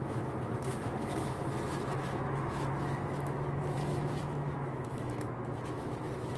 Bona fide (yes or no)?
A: no